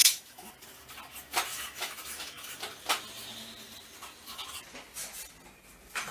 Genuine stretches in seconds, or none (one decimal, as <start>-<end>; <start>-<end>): 0.5-1.5; 2.5-6.1